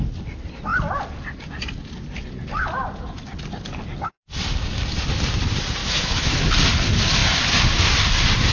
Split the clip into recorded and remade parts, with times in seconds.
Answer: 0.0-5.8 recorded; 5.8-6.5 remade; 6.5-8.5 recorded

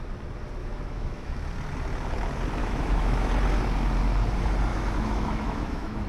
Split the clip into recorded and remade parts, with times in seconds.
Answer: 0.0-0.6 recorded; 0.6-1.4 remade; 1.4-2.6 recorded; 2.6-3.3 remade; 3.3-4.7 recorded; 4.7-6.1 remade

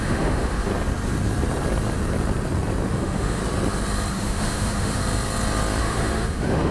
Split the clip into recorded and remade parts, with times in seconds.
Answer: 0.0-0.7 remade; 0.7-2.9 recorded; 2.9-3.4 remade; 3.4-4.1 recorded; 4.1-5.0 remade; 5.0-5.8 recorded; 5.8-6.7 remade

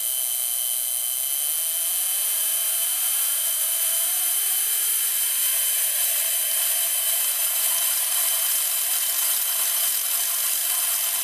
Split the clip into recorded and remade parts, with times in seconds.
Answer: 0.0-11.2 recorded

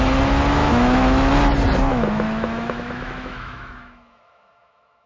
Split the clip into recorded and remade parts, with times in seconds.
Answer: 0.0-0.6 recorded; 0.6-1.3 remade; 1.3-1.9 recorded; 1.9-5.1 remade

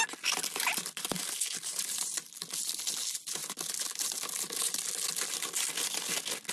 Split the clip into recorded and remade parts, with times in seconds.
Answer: 0.0-6.5 recorded

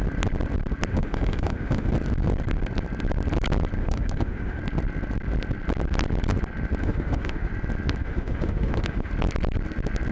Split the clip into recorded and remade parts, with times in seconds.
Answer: 0.0-0.9 recorded; 0.9-1.9 remade; 1.9-3.8 recorded; 3.8-4.6 remade; 4.6-6.8 recorded; 6.8-7.5 remade; 7.5-8.0 recorded; 8.0-9.1 remade; 9.1-10.1 recorded